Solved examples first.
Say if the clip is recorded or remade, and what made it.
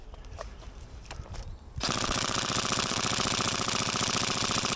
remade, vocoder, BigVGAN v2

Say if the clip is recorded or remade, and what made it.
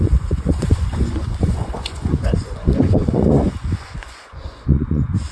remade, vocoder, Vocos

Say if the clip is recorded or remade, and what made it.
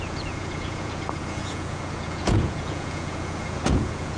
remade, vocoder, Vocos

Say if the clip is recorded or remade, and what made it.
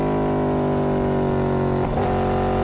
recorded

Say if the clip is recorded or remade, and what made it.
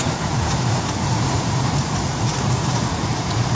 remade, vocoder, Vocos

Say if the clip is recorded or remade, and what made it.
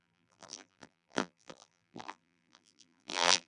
remade, vocoder, BigVGAN v2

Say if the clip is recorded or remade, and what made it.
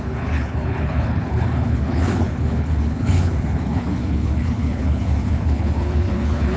remade, codec, HILCodec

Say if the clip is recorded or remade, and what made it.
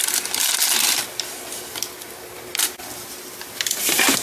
recorded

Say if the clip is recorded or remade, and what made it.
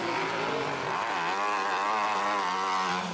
recorded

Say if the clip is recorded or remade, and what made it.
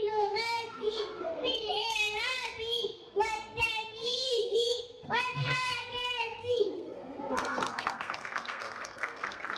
remade, codec, SNAC